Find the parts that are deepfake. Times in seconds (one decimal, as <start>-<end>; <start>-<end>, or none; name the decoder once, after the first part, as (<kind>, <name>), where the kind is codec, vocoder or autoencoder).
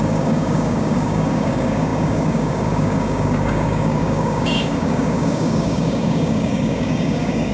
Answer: 0.0-7.5 (codec, DAC)